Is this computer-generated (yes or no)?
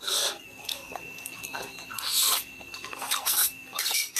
yes